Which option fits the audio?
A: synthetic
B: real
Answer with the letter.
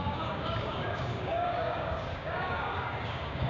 A